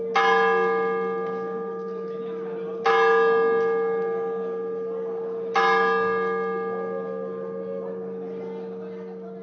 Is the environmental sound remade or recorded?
recorded